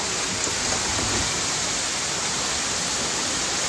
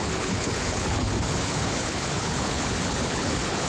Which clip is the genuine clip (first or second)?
first